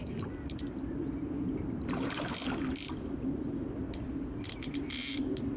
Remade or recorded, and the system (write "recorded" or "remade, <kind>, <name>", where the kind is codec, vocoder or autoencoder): recorded